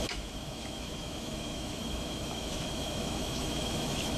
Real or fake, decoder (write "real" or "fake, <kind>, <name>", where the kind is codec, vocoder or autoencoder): fake, autoencoder, DAC-VAE